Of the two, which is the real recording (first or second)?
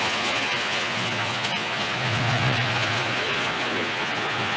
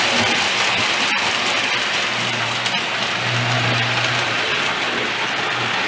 second